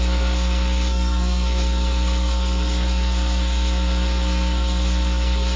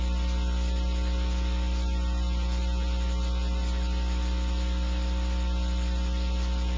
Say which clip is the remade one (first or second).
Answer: first